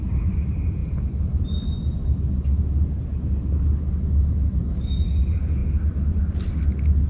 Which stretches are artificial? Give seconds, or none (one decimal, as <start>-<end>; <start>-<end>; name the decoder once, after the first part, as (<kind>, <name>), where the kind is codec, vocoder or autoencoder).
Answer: 4.6-5.1 (codec, DAC)